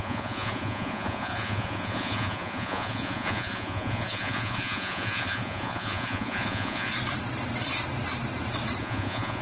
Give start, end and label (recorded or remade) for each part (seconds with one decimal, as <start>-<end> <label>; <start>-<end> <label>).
0.0-6.9 remade; 6.9-8.8 recorded; 8.8-9.4 remade